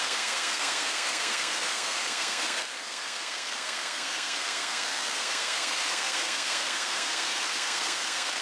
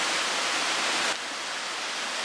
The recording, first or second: second